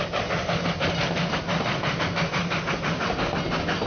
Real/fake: real